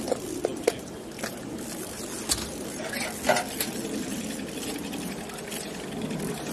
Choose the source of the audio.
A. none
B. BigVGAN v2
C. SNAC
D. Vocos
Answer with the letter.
A